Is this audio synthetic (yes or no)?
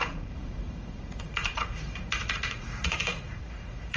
yes